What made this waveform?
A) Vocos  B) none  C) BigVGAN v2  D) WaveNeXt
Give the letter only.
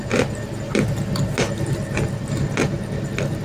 B